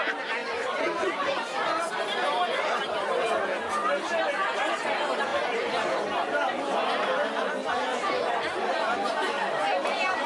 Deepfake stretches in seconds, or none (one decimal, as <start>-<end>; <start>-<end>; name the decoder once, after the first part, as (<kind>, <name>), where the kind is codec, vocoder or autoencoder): none